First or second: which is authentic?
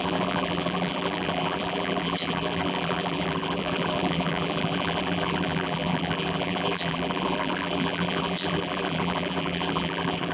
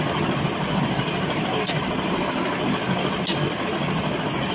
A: second